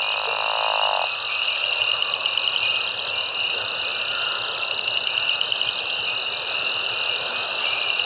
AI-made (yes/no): no